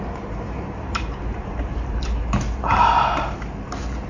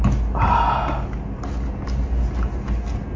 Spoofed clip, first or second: first